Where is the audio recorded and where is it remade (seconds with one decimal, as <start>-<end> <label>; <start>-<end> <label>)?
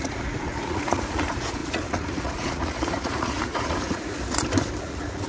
0.0-4.1 remade; 4.1-4.8 recorded; 4.8-5.3 remade